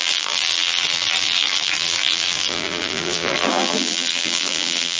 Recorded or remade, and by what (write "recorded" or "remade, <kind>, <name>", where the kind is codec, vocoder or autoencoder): remade, vocoder, BigVGAN v2